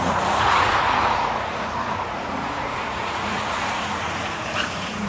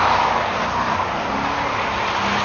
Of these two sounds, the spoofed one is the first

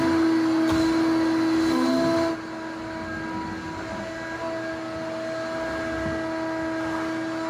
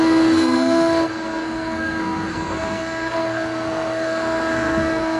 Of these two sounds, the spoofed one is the second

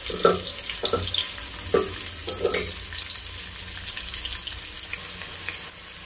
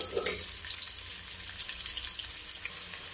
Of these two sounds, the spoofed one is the second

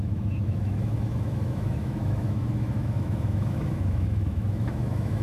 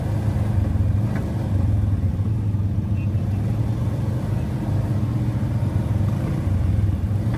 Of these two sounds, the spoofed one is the first